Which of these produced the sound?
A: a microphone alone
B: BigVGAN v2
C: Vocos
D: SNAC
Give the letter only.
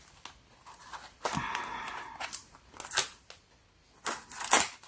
A